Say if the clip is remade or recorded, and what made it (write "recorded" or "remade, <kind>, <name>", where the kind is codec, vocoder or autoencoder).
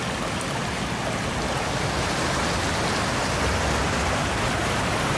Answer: recorded